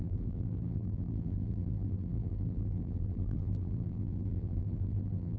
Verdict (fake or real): fake